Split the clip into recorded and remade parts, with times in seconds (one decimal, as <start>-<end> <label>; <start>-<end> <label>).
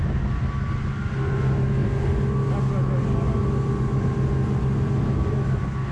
0.0-5.9 recorded